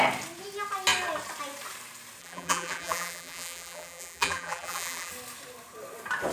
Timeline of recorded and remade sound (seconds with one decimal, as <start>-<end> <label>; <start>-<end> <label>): 0.0-2.2 recorded; 2.2-5.1 remade; 5.1-6.3 recorded